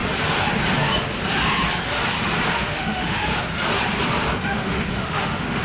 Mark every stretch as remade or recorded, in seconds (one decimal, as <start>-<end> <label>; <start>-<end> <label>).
0.0-2.5 recorded; 2.5-3.3 remade; 3.3-4.4 recorded; 4.4-5.6 remade